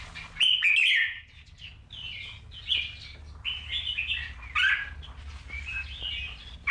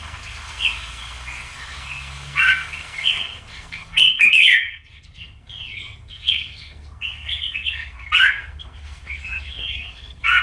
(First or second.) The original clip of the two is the first